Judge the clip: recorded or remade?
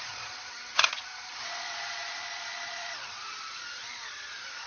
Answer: remade